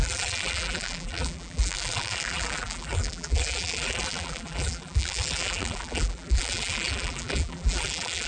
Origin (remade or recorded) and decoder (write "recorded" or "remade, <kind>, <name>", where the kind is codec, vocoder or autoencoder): remade, vocoder, BigVGAN v2